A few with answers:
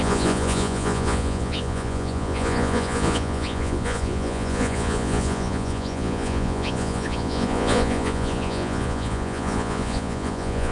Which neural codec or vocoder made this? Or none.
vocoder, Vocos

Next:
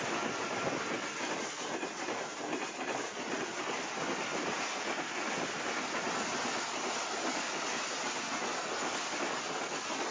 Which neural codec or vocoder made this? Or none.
none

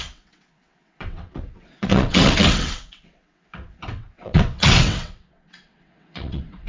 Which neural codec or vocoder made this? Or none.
vocoder, WaveNeXt